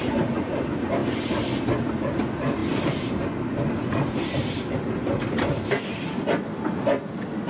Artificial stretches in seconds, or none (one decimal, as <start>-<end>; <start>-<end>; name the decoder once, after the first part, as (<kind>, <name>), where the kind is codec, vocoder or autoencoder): none